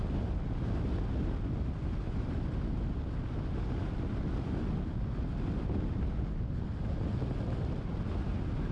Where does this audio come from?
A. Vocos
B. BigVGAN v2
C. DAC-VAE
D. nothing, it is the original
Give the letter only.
D